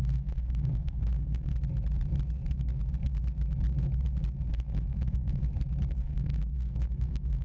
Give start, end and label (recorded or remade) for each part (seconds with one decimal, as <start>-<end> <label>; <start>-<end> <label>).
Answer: 0.0-1.5 remade; 1.5-4.5 recorded; 4.5-5.4 remade; 5.4-5.9 recorded; 5.9-7.4 remade